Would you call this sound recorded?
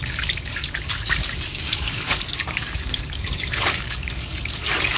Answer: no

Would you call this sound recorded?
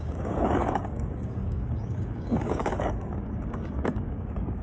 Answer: no